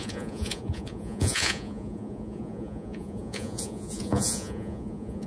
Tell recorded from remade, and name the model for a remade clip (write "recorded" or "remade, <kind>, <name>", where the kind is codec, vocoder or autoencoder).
remade, vocoder, Vocos